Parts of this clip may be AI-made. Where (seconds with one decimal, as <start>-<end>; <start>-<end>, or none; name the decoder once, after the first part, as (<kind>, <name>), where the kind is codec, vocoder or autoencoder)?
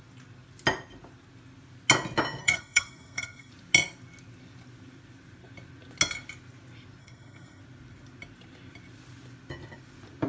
2.4-3.5 (codec, SNAC); 7.0-7.6